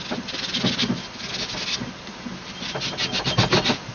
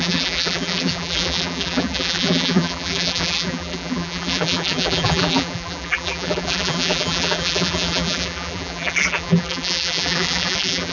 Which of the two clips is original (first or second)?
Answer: first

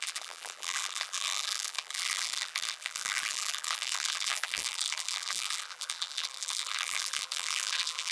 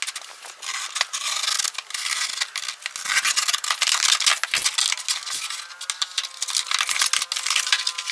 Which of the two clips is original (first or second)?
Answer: second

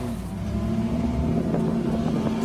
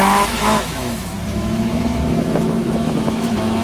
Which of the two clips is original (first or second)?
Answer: first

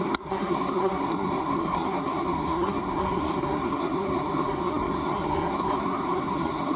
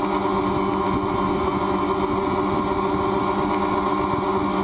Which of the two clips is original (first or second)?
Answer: second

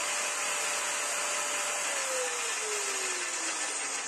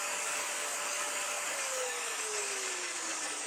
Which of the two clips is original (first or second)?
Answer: first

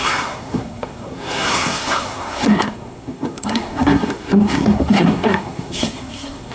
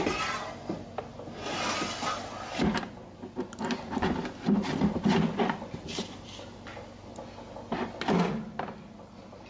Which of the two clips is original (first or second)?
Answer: second